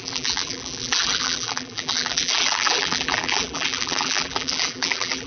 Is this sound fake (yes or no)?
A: yes